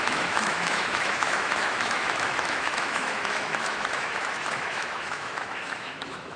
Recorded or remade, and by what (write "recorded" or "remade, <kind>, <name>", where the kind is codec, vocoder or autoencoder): remade, autoencoder, DAC-VAE